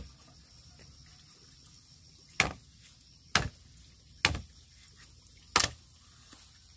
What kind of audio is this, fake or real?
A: real